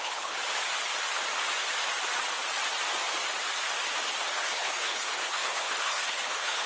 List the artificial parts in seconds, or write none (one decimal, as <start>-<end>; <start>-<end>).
0.0-0.4; 4.4-6.7